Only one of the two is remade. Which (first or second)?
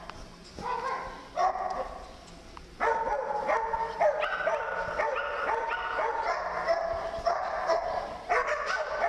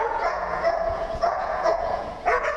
second